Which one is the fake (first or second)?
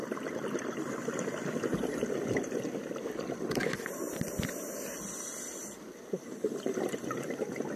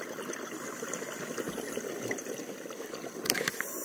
first